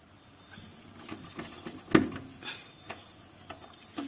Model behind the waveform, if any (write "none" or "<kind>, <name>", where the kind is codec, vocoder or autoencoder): none